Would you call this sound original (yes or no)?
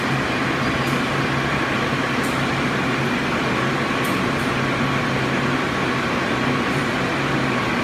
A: yes